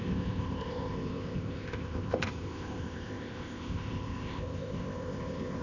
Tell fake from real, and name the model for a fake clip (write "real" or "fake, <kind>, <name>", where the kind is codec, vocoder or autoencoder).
fake, codec, ZipCodec